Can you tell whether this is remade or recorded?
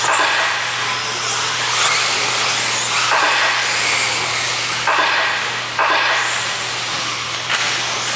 recorded